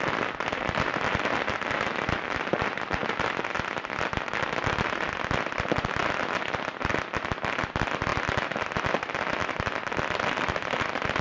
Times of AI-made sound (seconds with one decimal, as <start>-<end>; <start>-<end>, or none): none